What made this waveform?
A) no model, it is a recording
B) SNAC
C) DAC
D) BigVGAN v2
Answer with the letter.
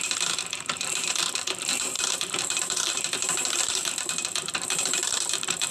D